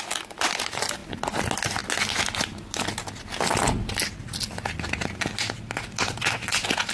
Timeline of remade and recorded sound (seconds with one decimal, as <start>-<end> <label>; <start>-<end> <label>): 0.0-6.9 recorded